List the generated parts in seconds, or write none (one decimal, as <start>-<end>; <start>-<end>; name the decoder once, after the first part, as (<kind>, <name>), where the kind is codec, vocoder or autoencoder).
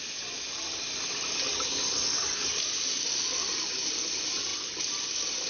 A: none